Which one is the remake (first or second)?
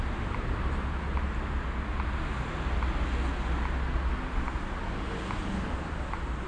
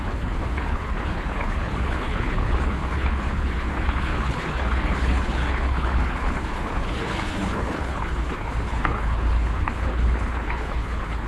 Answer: second